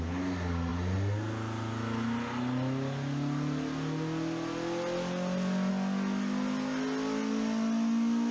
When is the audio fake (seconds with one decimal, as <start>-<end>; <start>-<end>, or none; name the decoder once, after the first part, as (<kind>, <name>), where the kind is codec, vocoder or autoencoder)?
none